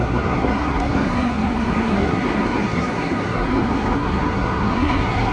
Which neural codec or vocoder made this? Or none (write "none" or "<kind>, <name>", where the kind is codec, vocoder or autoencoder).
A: codec, SNAC